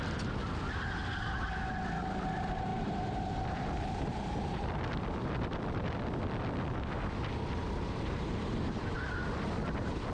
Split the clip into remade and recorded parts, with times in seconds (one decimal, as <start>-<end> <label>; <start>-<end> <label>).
0.0-2.7 recorded; 2.7-3.2 remade; 3.2-7.6 recorded; 7.6-8.6 remade; 8.6-10.1 recorded